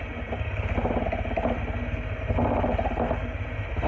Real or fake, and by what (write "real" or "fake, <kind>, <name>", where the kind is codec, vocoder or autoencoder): real